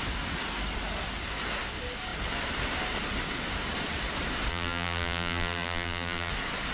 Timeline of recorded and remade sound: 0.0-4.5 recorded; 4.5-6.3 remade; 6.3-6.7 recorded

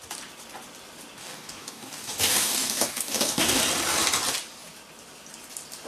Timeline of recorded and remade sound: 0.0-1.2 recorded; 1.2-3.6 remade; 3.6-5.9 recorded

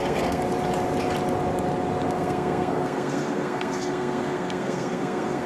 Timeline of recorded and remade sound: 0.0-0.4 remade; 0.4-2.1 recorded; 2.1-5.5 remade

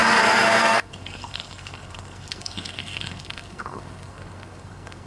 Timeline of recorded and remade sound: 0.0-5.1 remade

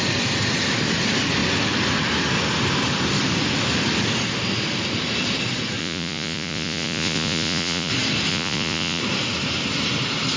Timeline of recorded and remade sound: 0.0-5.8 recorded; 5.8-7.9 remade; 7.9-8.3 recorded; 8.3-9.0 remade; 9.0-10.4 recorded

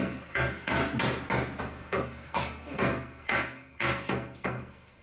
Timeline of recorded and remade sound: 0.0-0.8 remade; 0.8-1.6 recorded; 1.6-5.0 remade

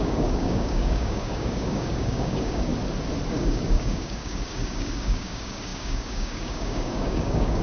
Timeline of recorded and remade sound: 0.0-2.7 remade; 2.7-3.3 recorded; 3.3-7.6 remade

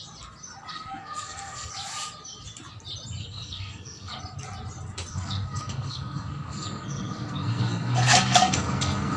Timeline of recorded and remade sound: 0.0-0.7 recorded; 0.7-1.7 remade; 1.7-3.2 recorded; 3.2-4.2 remade; 4.2-5.1 recorded; 5.1-9.2 remade